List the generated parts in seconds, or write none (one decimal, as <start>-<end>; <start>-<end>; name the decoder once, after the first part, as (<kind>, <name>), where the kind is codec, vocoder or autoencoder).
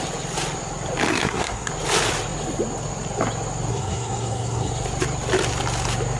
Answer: 1.1-1.7 (codec, SNAC); 3.7-4.7